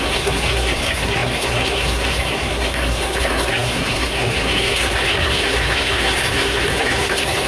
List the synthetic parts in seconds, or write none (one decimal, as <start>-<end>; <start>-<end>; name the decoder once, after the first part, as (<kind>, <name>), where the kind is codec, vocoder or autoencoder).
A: 0.0-7.5 (codec, SNAC)